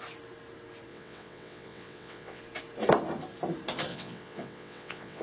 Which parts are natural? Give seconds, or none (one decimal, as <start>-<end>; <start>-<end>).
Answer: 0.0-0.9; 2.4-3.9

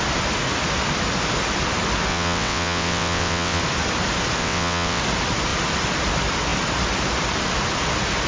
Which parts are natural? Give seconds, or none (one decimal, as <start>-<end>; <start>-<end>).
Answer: 0.0-2.1; 3.6-4.4; 5.0-8.3

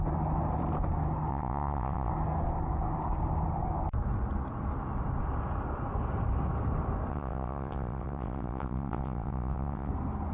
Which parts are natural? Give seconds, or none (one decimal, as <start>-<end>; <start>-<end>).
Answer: 0.0-1.3; 2.1-7.1; 9.9-10.3

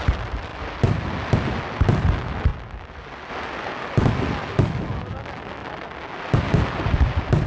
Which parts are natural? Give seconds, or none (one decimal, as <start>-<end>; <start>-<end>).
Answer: 0.0-7.5